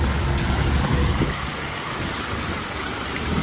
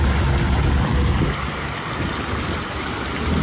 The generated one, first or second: first